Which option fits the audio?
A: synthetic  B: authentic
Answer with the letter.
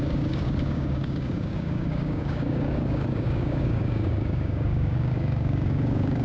A